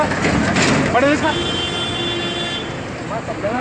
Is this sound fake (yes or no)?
no